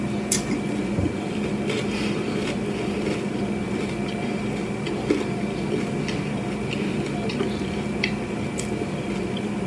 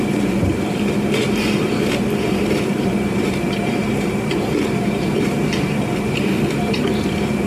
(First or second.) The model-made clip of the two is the second